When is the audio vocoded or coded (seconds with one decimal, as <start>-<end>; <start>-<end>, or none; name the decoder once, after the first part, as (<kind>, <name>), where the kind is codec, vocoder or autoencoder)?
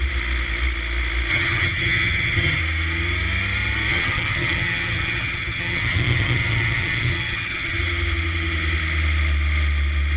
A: 1.3-2.6 (vocoder, HiFi-GAN); 3.9-7.8